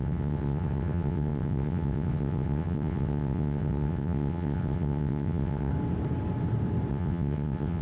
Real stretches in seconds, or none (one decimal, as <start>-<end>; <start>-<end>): 5.7-6.9